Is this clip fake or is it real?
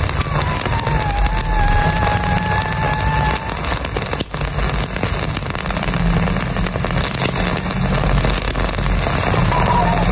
real